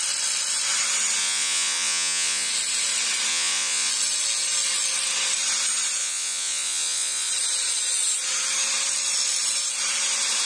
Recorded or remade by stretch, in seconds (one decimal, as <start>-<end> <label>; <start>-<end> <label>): 0.0-1.2 recorded; 1.2-2.5 remade; 2.5-3.3 recorded; 3.3-3.9 remade; 3.9-6.0 recorded; 6.0-7.3 remade; 7.3-10.5 recorded